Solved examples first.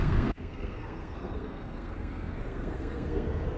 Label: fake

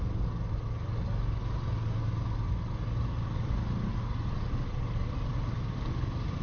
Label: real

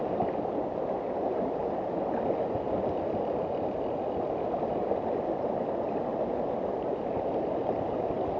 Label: real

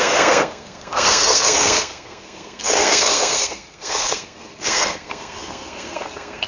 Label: fake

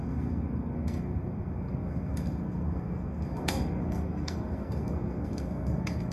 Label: fake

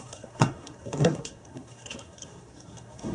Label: fake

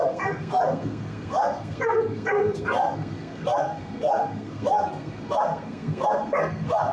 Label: fake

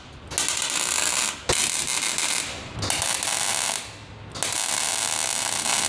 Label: real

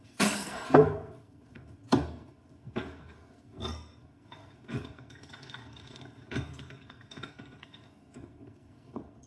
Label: fake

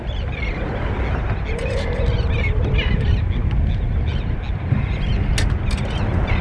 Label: real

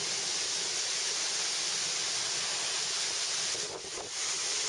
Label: real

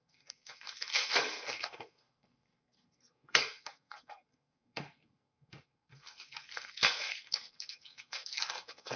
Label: fake